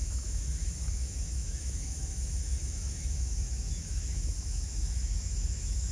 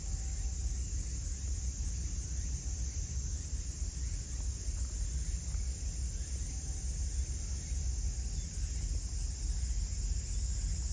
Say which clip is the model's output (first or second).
first